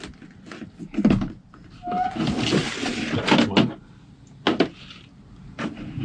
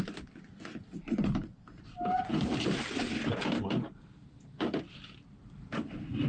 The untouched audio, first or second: first